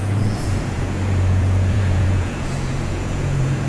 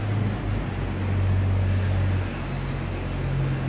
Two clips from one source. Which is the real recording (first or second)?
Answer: second